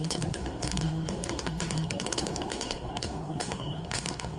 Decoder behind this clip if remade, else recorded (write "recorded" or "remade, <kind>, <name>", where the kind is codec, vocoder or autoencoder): remade, codec, SNAC